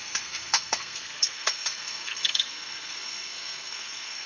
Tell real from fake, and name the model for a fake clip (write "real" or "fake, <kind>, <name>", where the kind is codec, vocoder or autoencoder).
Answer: fake, codec, SNAC